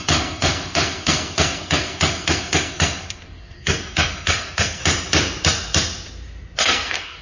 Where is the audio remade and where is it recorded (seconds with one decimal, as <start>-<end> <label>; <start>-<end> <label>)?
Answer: 0.0-4.8 remade; 4.8-6.6 recorded; 6.6-7.2 remade